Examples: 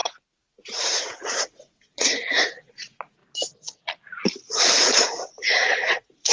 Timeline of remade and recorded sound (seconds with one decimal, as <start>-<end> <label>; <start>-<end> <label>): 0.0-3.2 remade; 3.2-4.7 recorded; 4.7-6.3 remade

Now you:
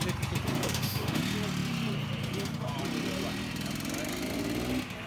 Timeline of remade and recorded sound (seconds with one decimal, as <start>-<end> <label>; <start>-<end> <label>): 0.0-0.6 recorded; 0.6-1.2 remade; 1.2-5.1 recorded

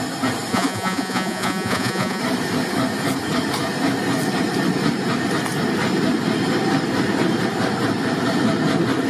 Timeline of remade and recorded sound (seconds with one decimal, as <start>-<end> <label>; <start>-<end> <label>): 0.0-0.5 recorded; 0.5-2.2 remade; 2.2-9.1 recorded

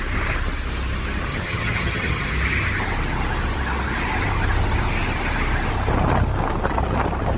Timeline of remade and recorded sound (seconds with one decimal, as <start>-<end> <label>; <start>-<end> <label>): 0.0-1.3 recorded; 1.3-2.3 remade; 2.3-7.4 recorded